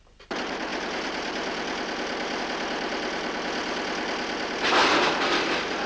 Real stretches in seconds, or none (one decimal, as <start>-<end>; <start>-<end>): 0.0-4.8